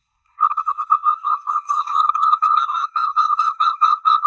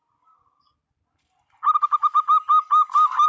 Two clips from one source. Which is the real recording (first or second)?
second